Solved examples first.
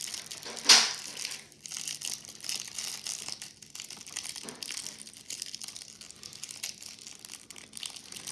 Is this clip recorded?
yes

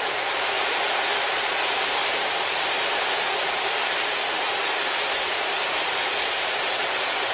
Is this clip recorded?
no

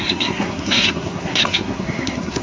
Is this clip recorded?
no